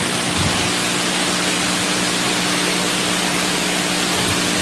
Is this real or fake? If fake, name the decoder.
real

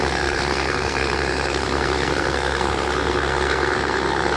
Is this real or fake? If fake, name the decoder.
fake, codec, SNAC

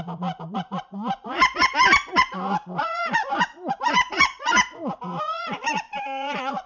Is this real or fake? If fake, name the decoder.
fake, vocoder, Vocos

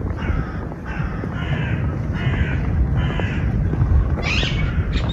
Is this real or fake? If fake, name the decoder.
real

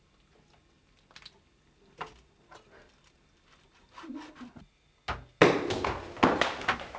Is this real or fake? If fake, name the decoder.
real